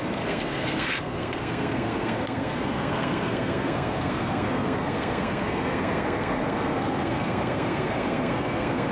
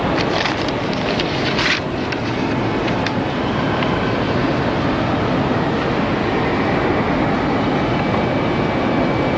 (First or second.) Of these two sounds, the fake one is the first